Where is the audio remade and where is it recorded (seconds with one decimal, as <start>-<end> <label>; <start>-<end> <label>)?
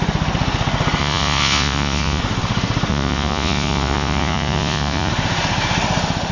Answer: 0.0-1.0 recorded; 1.0-2.2 remade; 2.2-2.9 recorded; 2.9-5.1 remade; 5.1-6.3 recorded